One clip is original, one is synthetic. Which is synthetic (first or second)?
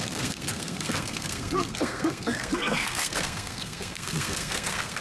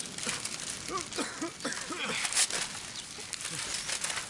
first